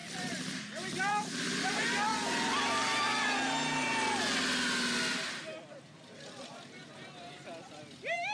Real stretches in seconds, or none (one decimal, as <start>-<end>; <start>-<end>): 2.1-6.2; 6.8-7.8